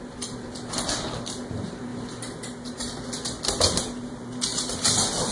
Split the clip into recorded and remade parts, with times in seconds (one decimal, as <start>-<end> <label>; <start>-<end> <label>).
0.0-1.9 recorded; 1.9-3.8 remade; 3.8-4.5 recorded; 4.5-5.3 remade